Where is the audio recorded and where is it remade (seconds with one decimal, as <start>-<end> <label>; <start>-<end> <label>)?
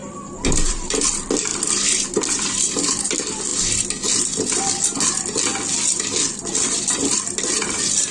0.0-3.5 remade; 3.5-6.3 recorded; 6.3-8.1 remade